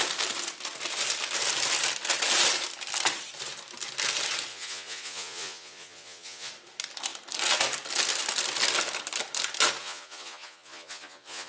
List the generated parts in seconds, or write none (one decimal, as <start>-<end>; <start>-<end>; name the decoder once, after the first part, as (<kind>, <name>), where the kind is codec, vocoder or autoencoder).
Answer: 4.5-6.5 (vocoder, Vocos); 9.8-11.5